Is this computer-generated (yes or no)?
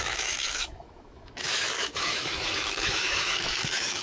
yes